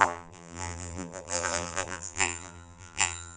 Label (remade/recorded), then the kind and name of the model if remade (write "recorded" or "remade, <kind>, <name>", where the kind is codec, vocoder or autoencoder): remade, vocoder, BigVGAN v2